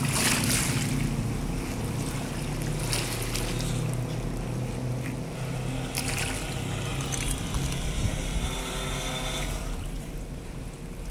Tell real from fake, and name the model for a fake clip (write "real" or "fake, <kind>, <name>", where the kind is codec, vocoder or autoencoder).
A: real